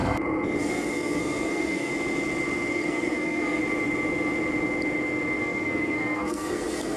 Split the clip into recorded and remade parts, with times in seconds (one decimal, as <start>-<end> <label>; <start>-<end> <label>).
0.0-0.6 recorded; 0.6-1.9 remade; 1.9-2.7 recorded; 2.7-3.6 remade; 3.6-5.4 recorded; 5.4-7.0 remade